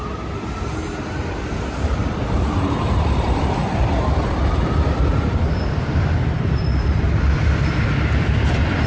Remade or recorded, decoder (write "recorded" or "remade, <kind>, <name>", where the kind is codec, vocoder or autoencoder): remade, vocoder, BigVGAN v2